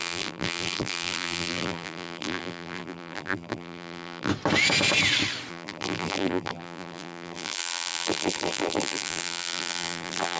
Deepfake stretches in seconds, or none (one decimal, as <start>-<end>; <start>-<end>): 0.0-4.3; 5.5-10.4

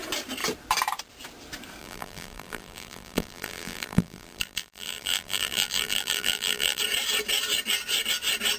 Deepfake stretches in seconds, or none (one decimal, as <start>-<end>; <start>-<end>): 1.8-6.8

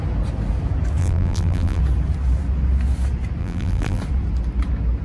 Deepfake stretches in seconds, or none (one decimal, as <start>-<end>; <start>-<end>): 1.0-1.8; 3.4-4.0

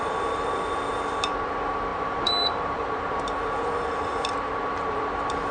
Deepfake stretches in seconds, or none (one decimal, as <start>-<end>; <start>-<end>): 0.0-5.5

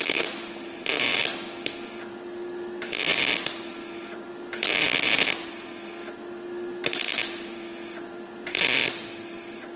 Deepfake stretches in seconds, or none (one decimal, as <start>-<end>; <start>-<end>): none

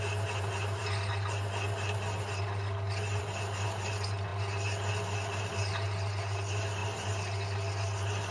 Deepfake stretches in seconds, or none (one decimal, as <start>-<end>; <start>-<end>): none